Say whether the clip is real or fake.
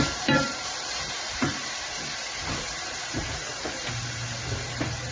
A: fake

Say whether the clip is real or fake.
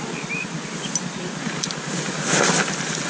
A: real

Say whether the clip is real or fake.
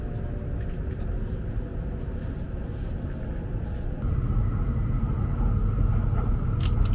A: real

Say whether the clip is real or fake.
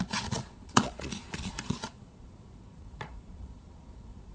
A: fake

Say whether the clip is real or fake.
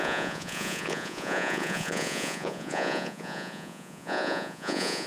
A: fake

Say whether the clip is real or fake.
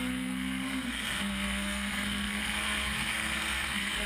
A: fake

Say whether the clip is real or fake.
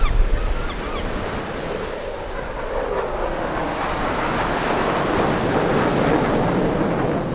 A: fake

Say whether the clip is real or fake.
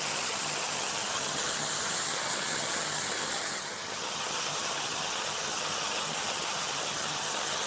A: fake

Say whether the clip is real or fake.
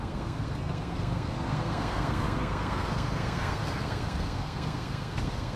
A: fake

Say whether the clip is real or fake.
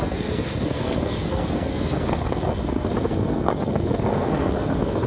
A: fake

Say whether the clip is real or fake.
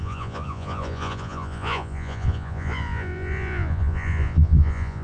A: fake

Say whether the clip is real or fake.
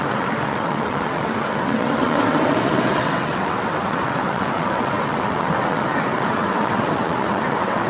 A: fake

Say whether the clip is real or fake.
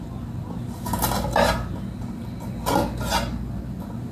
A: real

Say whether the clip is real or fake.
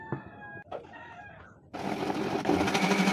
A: real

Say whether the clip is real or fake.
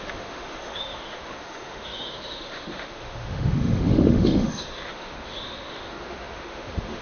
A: fake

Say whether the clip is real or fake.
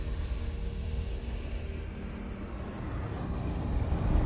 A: real